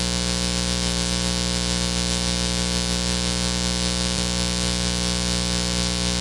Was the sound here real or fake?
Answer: real